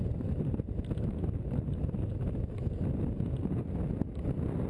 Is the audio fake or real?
real